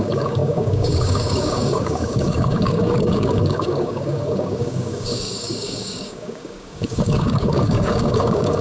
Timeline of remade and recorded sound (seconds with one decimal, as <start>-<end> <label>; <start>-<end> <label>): 0.0-8.6 remade